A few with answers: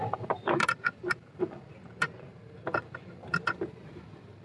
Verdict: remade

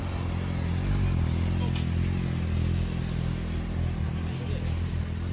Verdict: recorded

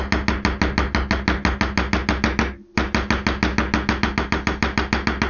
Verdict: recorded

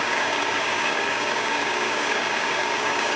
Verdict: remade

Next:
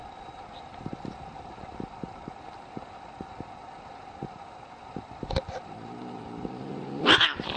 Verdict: recorded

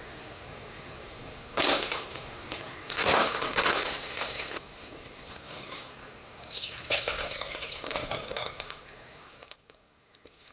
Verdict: remade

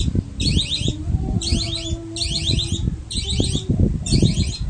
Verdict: remade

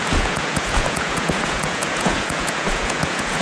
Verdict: remade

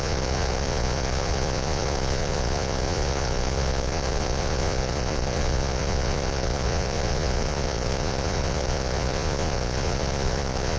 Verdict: remade